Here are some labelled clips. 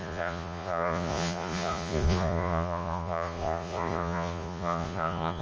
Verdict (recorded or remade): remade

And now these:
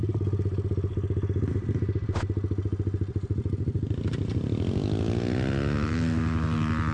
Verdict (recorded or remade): recorded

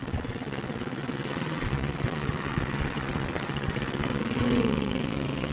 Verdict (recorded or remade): remade